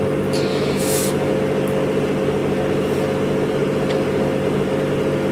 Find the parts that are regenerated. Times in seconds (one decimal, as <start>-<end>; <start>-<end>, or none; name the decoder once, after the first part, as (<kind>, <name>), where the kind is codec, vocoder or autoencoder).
0.5-1.3 (autoencoder, DAC-VAE)